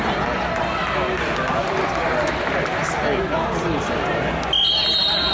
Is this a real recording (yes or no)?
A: yes